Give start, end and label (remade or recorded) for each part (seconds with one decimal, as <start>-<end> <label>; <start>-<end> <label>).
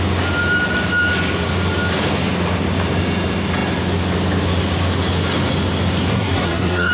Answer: 0.0-6.1 recorded; 6.1-6.9 remade